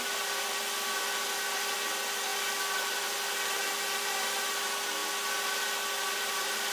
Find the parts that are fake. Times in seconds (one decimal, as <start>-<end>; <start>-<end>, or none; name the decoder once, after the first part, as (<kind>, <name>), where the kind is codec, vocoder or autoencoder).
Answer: none